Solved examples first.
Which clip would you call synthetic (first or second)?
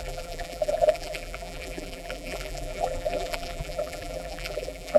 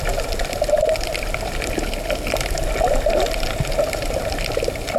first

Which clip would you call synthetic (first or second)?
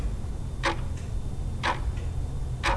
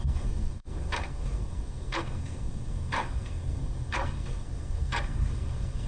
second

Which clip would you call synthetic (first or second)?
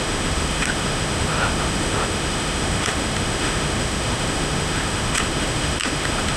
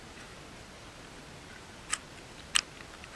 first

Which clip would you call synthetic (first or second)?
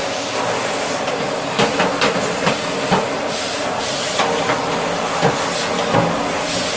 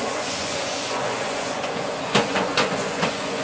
second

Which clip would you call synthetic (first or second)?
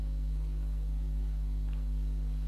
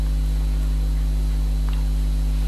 first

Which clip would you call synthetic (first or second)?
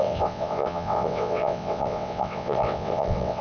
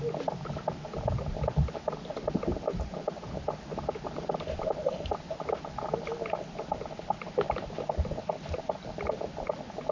first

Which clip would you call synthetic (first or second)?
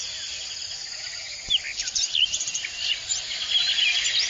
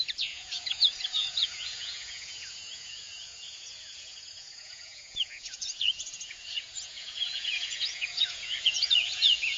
second